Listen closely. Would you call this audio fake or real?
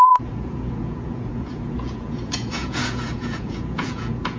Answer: fake